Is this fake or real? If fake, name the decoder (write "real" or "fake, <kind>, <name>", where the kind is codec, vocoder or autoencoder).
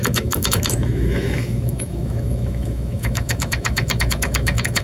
fake, autoencoder, DAC-VAE